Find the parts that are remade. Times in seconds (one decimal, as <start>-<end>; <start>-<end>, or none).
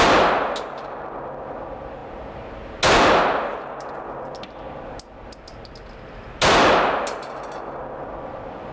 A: none